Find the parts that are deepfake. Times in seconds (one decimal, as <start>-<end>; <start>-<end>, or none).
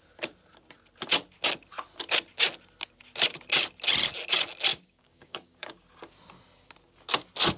4.7-5.7